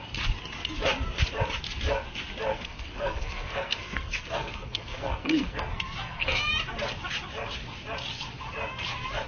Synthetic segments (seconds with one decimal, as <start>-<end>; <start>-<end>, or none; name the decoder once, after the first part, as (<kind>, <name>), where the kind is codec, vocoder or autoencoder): 2.5-6.4 (codec, SNAC)